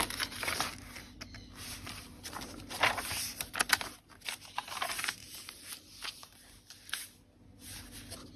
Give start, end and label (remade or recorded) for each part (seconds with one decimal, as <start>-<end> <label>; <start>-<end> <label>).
0.0-5.2 recorded; 5.2-5.8 remade; 5.8-8.4 recorded

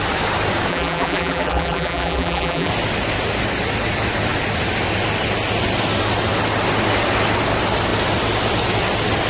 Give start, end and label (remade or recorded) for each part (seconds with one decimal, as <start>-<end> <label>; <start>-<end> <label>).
0.0-0.7 recorded; 0.7-2.7 remade; 2.7-9.3 recorded

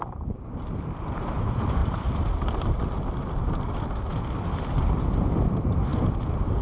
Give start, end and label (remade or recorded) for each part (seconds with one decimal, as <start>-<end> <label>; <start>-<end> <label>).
0.0-1.8 recorded; 1.8-3.2 remade; 3.2-6.6 recorded

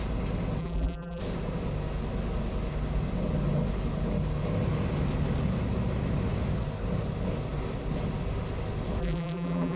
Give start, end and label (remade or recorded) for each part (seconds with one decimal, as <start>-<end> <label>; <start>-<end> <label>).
0.0-0.6 recorded; 0.6-1.2 remade; 1.2-9.0 recorded; 9.0-9.8 remade